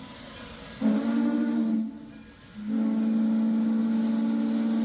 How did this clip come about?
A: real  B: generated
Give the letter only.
A